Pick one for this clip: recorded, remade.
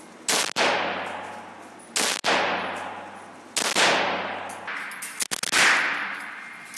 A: recorded